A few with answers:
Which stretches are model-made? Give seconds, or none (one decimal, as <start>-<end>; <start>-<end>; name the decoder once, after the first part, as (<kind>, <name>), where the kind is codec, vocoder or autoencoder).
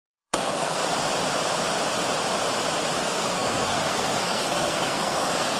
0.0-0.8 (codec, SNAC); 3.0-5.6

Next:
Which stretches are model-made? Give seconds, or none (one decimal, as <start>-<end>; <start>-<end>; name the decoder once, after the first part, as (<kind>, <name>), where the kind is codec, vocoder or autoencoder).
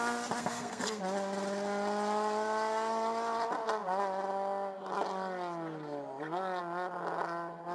0.4-1.0 (codec, SNAC)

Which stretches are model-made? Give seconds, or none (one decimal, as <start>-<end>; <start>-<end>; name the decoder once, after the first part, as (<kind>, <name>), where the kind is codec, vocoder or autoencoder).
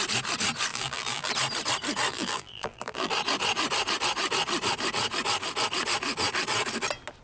0.7-1.3 (vocoder, BigVGAN v2); 2.1-3.1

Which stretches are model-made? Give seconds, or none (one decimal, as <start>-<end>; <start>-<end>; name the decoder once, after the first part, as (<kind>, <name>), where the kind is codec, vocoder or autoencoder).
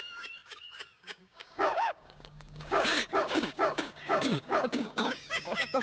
0.0-5.8 (codec, DAC)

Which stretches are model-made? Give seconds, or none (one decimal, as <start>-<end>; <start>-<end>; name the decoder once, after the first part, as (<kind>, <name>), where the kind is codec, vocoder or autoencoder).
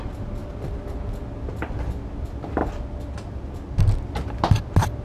none